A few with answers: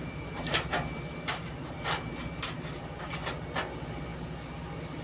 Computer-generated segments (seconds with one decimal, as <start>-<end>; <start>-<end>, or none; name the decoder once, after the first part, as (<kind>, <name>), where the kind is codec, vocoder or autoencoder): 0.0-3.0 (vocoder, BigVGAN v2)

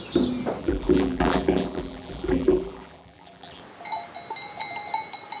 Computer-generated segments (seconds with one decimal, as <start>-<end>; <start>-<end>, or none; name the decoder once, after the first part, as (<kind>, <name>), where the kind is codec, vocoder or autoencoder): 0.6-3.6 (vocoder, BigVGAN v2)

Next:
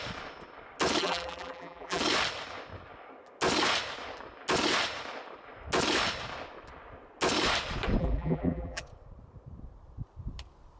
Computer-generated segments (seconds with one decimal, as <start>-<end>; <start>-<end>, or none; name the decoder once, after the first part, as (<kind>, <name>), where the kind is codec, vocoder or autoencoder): 1.0-2.0 (vocoder, BigVGAN v2); 8.0-8.8